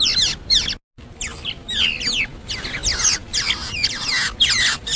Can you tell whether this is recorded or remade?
recorded